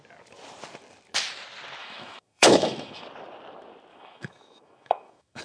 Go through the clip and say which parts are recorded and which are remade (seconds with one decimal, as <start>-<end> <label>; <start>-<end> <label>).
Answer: 0.0-1.8 recorded; 1.8-3.0 remade; 3.0-3.9 recorded; 3.9-5.4 remade